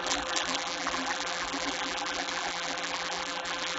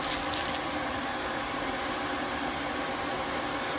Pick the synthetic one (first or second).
first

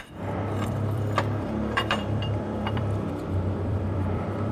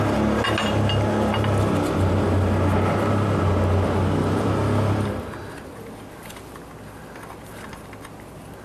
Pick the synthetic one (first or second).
first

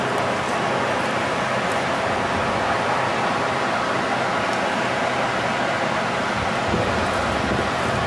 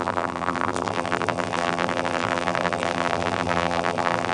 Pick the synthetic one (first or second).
second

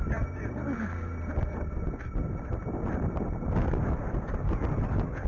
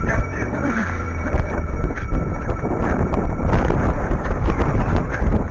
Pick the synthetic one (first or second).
second